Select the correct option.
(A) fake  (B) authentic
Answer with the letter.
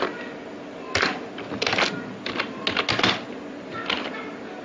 B